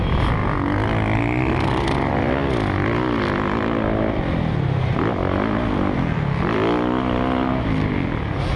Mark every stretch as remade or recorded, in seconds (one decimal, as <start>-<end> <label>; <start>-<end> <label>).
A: 0.0-8.6 recorded